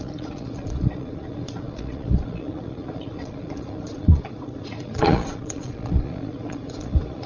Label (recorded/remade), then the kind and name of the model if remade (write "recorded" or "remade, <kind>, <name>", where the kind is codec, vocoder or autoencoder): remade, vocoder, Vocos